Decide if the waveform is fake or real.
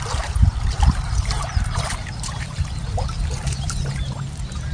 fake